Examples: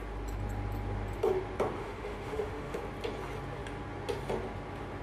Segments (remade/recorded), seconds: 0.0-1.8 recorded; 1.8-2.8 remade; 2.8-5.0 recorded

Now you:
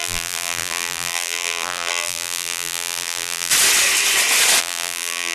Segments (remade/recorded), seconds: 0.0-3.5 remade; 3.5-4.6 recorded; 4.6-5.3 remade

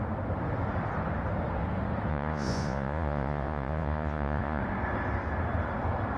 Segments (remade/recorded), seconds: 0.0-2.1 recorded; 2.1-4.6 remade; 4.6-6.2 recorded

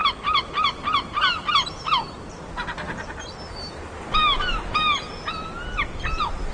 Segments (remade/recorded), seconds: 0.0-6.5 recorded